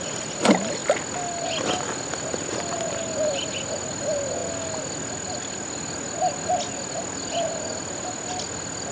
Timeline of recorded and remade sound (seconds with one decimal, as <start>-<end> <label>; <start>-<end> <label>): 0.0-8.9 recorded

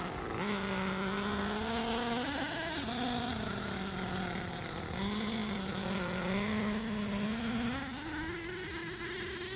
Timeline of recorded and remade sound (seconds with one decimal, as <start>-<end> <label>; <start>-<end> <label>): 0.0-9.6 recorded

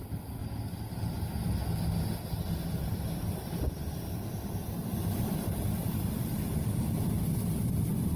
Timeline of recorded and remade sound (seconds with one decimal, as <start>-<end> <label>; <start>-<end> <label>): 0.0-0.4 remade; 0.4-3.2 recorded; 3.2-8.2 remade

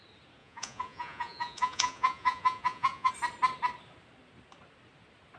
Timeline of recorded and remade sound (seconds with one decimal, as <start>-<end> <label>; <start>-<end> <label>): 0.0-0.4 recorded; 0.4-3.1 remade; 3.1-5.4 recorded

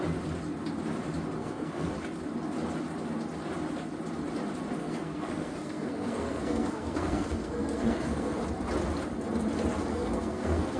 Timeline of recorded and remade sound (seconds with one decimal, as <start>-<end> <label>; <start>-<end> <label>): 0.0-1.4 recorded; 1.4-1.9 remade; 1.9-4.8 recorded; 4.8-8.4 remade; 8.4-9.9 recorded; 9.9-10.8 remade

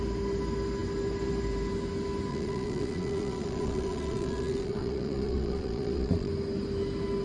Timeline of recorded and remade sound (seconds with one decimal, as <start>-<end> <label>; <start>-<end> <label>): 0.0-2.3 recorded; 2.3-6.3 remade; 6.3-7.2 recorded

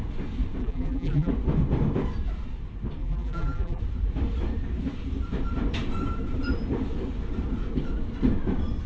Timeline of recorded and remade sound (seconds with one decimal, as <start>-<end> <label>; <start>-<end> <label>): 0.0-0.6 recorded; 0.6-1.3 remade; 1.3-3.0 recorded; 3.0-3.8 remade; 3.8-8.9 recorded